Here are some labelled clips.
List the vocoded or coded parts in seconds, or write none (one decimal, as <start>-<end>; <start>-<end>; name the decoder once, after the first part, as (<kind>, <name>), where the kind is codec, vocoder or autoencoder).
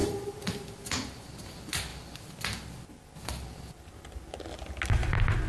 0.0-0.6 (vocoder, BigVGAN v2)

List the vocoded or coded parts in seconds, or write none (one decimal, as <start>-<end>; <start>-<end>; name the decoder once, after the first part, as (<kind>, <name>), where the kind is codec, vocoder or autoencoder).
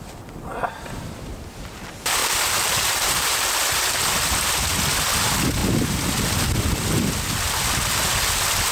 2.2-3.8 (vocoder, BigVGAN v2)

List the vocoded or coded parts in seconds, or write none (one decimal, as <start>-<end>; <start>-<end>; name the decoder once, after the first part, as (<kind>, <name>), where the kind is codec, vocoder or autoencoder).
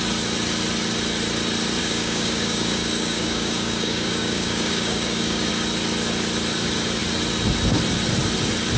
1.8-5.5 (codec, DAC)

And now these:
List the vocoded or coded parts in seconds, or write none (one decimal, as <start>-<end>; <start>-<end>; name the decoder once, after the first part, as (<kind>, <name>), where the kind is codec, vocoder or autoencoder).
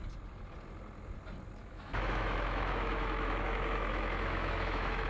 1.6-5.1 (autoencoder, DAC-VAE)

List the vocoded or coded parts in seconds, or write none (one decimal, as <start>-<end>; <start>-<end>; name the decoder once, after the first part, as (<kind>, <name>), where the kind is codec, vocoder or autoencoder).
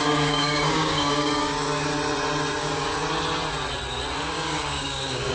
0.0-1.9 (codec, DAC); 2.6-3.0; 4.2-5.3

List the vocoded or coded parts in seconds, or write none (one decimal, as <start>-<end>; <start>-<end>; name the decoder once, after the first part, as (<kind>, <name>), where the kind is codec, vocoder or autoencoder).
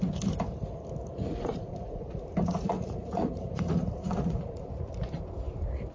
1.3-4.7 (vocoder, Vocos)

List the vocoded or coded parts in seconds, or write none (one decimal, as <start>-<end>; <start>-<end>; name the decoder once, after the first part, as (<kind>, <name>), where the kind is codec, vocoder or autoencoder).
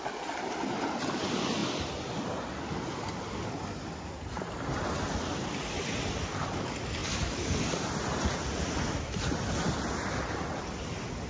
none